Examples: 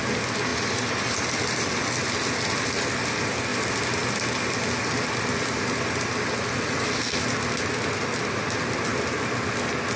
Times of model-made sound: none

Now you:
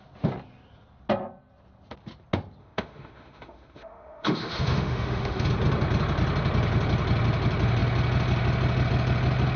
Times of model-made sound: 2.6-5.5 (autoencoder, DAC-VAE)

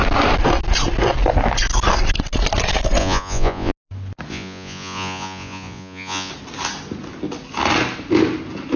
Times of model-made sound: 3.0-3.7 (vocoder, Vocos); 4.3-6.3

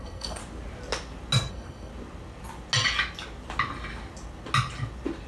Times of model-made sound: 0.0-0.4 (codec, SNAC); 1.5-1.9

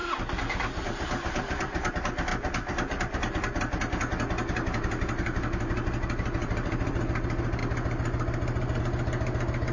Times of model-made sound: 0.0-1.9 (vocoder, BigVGAN v2); 2.3-3.6; 6.4-7.0